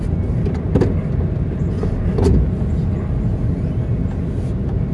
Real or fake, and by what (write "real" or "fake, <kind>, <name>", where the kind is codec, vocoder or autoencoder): real